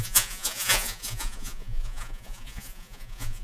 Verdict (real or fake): fake